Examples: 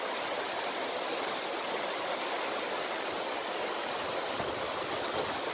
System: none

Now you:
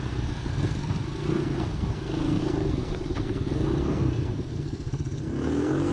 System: codec, SNAC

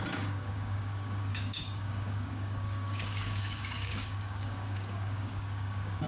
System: codec, DAC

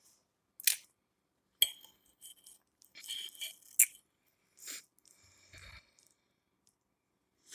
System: none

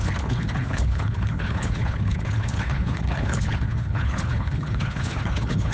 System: codec, HILCodec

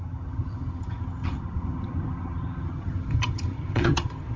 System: vocoder, HiFi-GAN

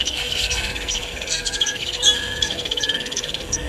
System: codec, SNAC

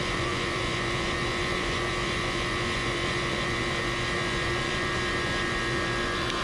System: vocoder, Vocos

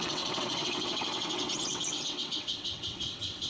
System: vocoder, WaveNeXt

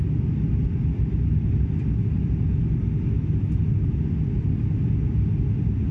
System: none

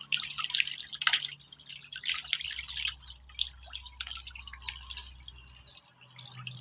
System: none